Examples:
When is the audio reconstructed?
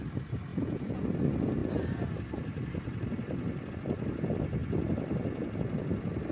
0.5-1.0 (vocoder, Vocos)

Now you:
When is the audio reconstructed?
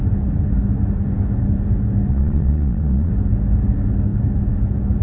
2.1-3.1 (vocoder, Vocos)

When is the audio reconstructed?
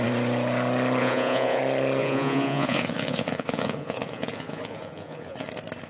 1.0-1.6 (vocoder, Vocos); 2.0-5.5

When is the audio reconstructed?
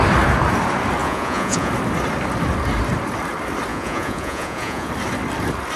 1.0-1.7 (vocoder, Vocos); 3.7-4.9